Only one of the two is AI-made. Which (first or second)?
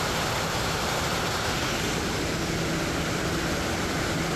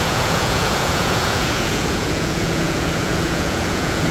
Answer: second